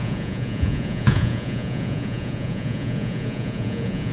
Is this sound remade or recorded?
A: remade